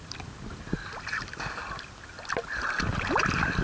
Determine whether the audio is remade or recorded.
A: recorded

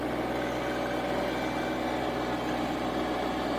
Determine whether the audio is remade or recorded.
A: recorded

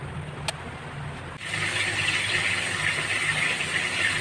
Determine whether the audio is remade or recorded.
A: recorded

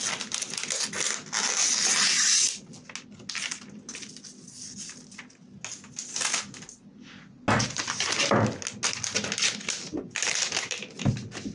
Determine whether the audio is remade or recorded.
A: recorded